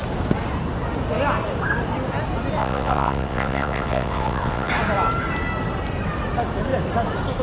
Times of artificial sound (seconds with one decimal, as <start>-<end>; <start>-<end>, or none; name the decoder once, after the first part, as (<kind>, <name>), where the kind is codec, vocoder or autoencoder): 2.6-4.7 (vocoder, WaveNeXt)